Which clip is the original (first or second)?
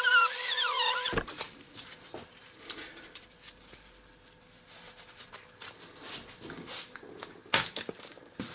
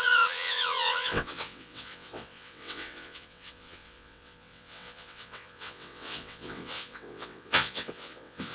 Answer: first